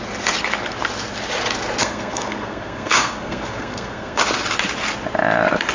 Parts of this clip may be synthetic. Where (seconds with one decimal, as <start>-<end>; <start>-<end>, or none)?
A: 1.8-4.2